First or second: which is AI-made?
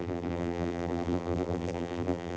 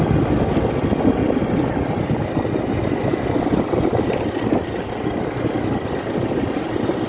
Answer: first